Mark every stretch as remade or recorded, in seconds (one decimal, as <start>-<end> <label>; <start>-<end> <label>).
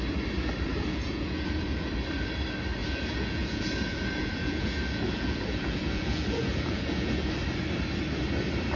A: 0.0-0.7 recorded; 0.7-1.9 remade; 1.9-2.8 recorded; 2.8-7.3 remade; 7.3-8.8 recorded